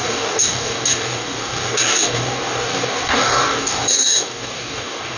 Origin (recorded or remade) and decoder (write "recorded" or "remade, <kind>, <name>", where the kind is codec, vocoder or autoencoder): remade, codec, DAC